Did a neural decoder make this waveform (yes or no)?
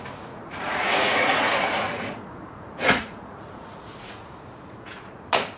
yes